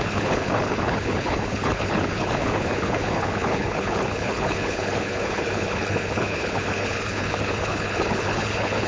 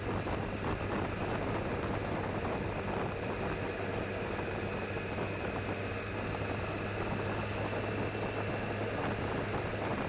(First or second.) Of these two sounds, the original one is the second